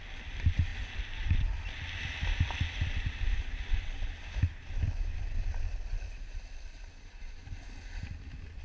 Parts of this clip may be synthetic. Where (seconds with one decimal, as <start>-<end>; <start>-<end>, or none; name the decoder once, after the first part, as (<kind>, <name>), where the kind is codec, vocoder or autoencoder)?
none